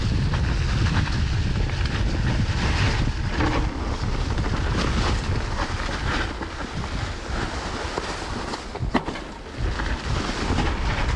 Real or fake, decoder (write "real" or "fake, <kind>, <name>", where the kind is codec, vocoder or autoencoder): real